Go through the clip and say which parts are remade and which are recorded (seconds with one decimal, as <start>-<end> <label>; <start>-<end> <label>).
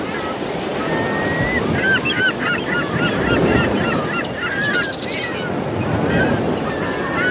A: 0.0-7.3 recorded